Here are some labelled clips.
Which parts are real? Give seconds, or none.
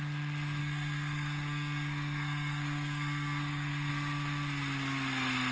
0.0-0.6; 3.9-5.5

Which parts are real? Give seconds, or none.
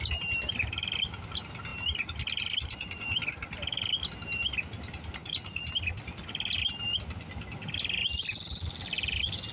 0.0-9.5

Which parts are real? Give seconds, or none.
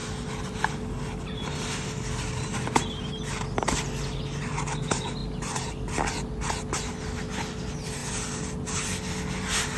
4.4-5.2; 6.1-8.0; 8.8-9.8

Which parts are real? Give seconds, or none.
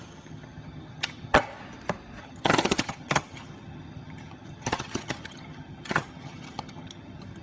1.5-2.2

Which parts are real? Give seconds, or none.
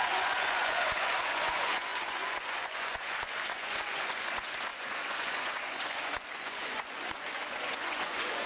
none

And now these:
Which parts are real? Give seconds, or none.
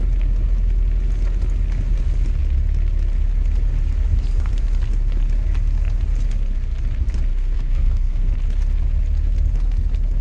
0.0-7.3; 8.3-10.2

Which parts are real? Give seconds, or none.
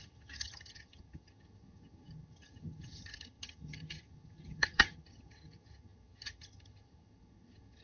none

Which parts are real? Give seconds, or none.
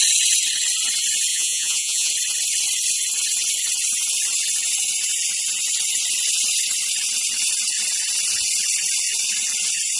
0.0-1.3; 2.1-10.0